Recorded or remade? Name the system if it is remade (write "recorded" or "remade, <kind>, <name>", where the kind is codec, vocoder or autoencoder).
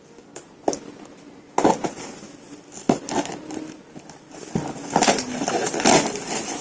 recorded